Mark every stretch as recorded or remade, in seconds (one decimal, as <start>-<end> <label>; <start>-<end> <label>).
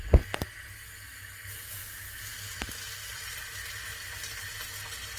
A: 0.0-5.2 recorded